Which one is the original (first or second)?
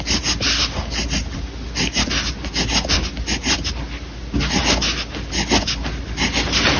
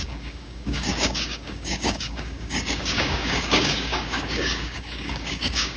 first